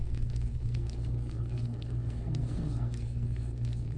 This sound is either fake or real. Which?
fake